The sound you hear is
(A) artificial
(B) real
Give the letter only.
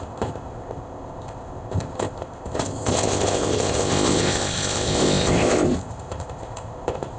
A